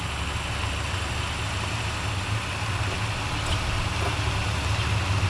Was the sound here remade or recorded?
recorded